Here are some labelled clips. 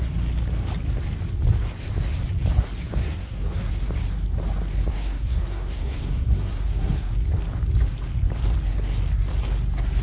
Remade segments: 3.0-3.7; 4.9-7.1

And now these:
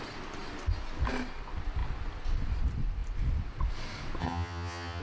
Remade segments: 4.2-5.0

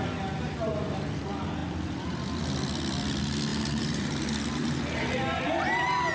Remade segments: 3.5-4.8

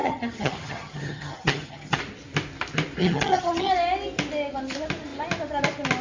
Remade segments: 0.0-2.0; 3.0-3.7

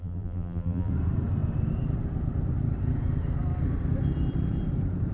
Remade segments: 0.0-0.9